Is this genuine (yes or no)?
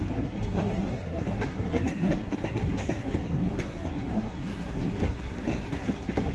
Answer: no